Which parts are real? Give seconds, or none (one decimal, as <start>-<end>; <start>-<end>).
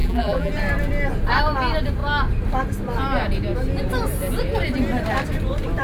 0.5-5.8